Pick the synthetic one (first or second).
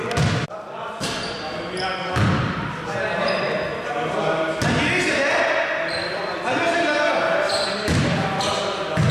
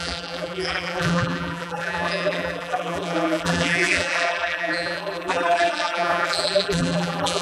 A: second